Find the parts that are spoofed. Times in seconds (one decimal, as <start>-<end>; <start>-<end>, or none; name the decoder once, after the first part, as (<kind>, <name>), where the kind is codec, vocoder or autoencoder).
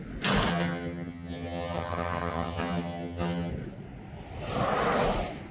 0.5-3.5 (vocoder, HiFi-GAN)